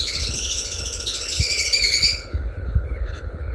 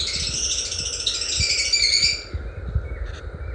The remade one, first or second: first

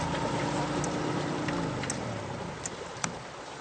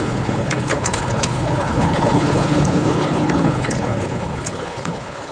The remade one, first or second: second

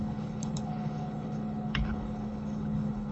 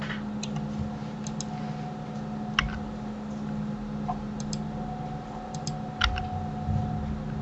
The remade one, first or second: first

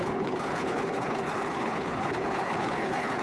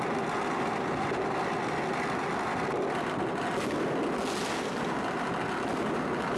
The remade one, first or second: first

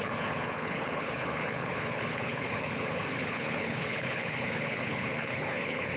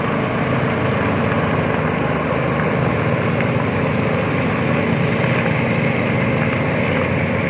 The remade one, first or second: first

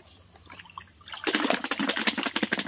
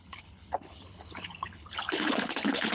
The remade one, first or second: second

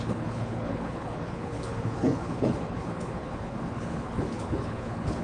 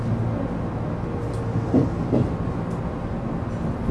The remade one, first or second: first